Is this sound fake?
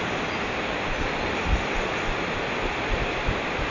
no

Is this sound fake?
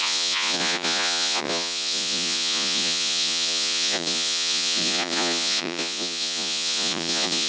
yes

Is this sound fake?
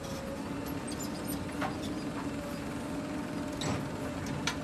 no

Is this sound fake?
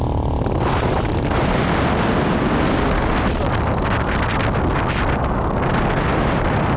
no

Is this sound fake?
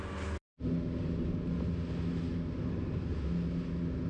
no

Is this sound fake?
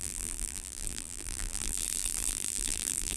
yes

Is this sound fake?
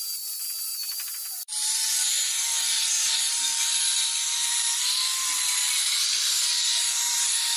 yes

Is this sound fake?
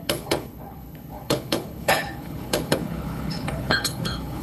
yes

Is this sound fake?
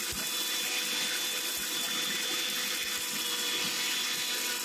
no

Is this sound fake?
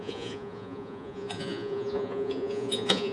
yes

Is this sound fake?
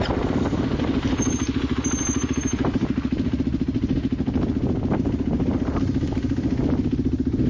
no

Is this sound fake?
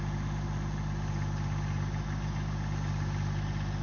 no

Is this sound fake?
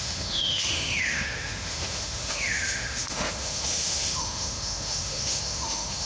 yes